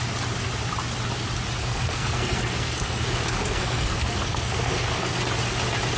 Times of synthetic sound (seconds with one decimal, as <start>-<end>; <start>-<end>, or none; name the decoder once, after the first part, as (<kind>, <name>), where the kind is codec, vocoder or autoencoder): 1.6-5.2 (codec, SNAC)

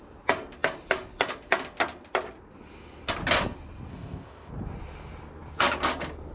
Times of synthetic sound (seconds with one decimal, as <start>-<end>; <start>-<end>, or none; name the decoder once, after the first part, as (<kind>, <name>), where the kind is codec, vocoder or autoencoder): 3.9-4.5 (codec, ZipCodec)

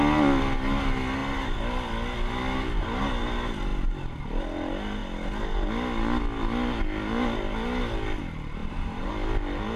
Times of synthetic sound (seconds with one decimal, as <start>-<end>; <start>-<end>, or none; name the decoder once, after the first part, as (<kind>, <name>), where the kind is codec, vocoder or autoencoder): 8.6-9.1 (vocoder, BigVGAN v2)

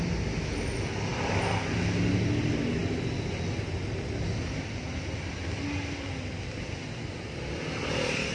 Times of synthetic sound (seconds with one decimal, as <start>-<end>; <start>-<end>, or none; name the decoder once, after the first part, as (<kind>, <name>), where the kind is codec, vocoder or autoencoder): none

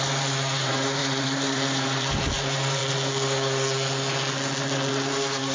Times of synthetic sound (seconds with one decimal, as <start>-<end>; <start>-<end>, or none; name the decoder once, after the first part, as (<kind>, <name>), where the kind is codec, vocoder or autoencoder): 0.0-2.8 (vocoder, BigVGAN v2); 4.9-5.5

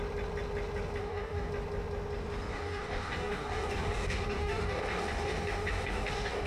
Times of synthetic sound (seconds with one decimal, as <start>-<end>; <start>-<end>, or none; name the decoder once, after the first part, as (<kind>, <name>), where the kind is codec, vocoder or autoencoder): 1.0-1.5 (codec, DAC); 2.5-6.5

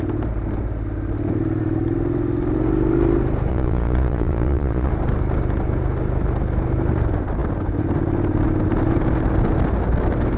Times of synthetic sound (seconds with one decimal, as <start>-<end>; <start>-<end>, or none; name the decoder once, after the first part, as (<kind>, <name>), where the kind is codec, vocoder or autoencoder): 3.5-4.9 (vocoder, Vocos)